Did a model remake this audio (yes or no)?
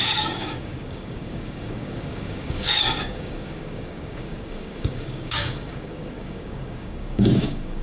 yes